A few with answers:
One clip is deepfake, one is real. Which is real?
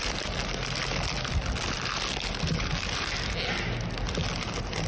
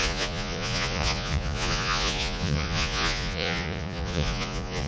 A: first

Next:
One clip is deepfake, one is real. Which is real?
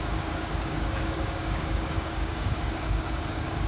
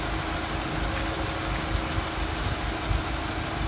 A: second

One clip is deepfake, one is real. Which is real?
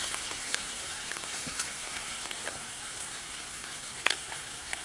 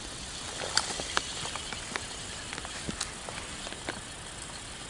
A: second